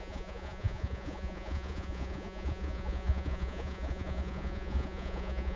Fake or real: fake